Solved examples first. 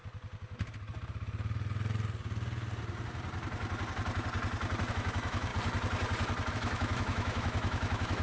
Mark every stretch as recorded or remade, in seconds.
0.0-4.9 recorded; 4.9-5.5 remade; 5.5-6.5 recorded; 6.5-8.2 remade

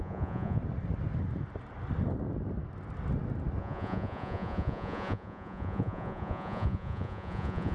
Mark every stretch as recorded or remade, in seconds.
0.0-0.6 remade; 0.6-3.6 recorded; 3.6-7.7 remade